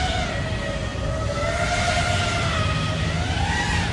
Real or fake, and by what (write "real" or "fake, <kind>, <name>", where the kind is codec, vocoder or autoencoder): real